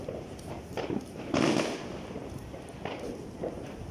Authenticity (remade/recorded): recorded